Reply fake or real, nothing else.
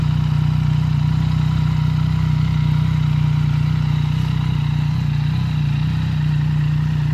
real